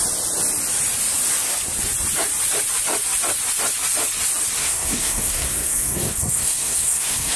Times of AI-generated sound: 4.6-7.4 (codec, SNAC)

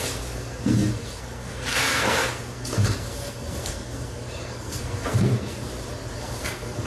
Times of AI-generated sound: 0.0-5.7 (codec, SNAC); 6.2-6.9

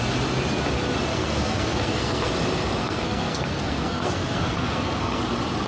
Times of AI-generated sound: 1.1-2.3 (codec, SNAC); 2.8-5.2

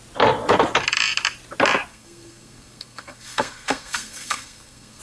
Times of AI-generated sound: 1.9-5.0 (codec, SNAC)

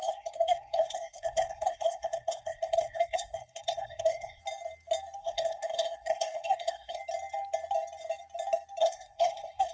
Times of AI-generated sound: 0.0-4.4 (codec, SNAC); 5.2-7.0; 8.8-9.7

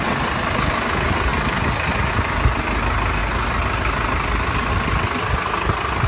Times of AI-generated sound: none

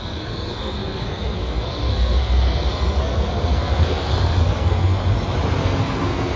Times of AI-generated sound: 0.0-5.0 (codec, SNAC); 5.6-6.4

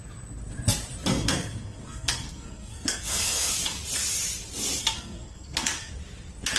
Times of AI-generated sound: 1.1-3.5 (codec, SNAC); 4.8-5.9